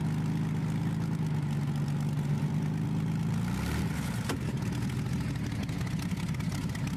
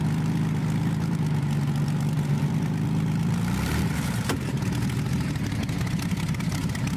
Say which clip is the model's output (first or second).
second